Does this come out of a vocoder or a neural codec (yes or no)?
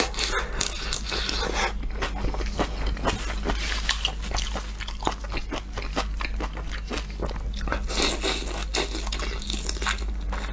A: no